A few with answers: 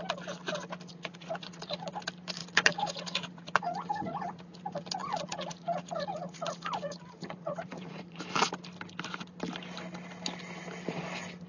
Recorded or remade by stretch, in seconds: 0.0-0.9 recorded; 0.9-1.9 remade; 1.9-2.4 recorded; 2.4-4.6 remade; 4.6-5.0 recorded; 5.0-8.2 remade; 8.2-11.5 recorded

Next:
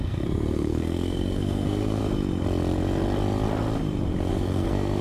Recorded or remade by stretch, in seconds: 0.0-2.0 remade; 2.0-4.3 recorded; 4.3-5.0 remade

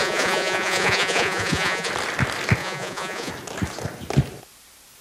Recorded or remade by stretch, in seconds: 0.0-1.9 remade; 1.9-2.6 recorded; 2.6-3.3 remade; 3.3-5.0 recorded

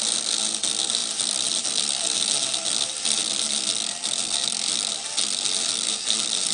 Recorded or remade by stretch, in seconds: 0.0-6.5 recorded

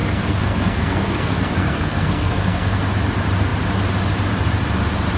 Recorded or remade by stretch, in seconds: 0.0-2.8 remade; 2.8-5.2 recorded

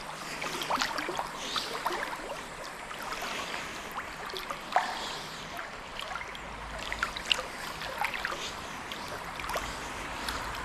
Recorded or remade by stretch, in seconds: 0.0-5.9 remade; 5.9-9.4 recorded; 9.4-10.6 remade